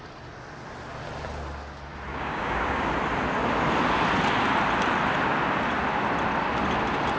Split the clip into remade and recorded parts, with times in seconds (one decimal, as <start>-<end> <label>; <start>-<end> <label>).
0.0-2.1 recorded; 2.1-2.9 remade; 2.9-7.2 recorded